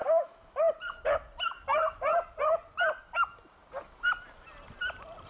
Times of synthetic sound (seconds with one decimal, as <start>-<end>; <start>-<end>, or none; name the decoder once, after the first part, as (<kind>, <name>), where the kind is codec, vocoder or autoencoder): 0.0-0.6 (autoencoder, DAC-VAE)